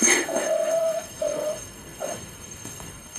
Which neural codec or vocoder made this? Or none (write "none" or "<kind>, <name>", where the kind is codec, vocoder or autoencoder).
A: codec, SNAC